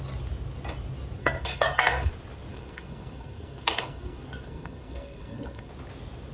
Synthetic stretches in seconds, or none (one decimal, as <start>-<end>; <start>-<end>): 1.2-2.1; 2.5-5.7